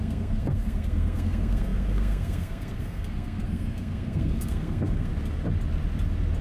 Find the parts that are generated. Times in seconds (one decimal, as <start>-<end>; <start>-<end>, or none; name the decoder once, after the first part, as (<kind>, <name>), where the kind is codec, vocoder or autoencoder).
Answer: 0.0-5.1 (codec, SNAC)